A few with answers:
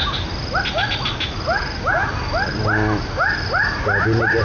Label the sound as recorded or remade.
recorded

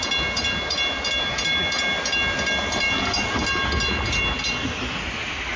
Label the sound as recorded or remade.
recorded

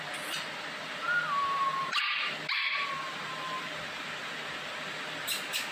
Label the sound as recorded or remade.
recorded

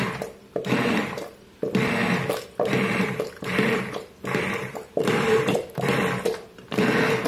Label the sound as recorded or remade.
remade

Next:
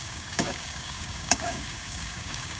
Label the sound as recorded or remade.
remade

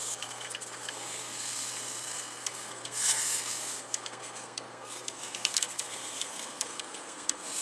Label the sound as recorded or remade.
remade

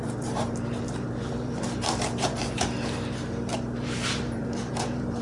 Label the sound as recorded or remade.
remade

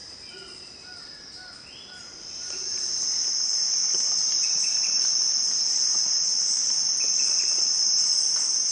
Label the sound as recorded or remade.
recorded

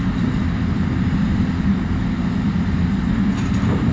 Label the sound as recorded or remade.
recorded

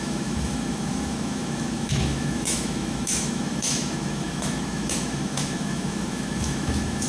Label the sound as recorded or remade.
remade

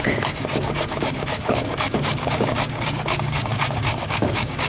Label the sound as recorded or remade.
remade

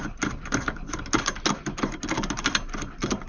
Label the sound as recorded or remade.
recorded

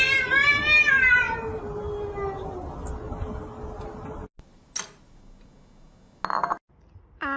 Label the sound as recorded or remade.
recorded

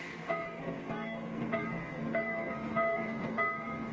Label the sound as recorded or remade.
remade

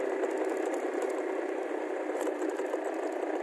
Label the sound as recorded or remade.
recorded